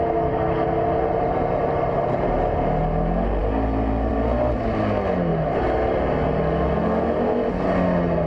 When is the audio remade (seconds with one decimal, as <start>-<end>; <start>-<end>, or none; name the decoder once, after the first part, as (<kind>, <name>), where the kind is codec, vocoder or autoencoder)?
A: none